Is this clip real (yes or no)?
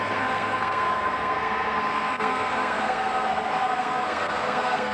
no